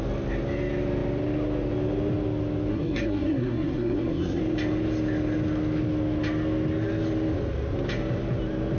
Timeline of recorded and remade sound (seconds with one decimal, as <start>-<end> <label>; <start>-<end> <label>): 0.0-2.7 recorded; 2.7-4.4 remade; 4.4-8.8 recorded